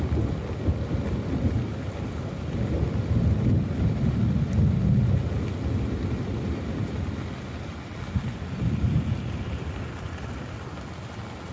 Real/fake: real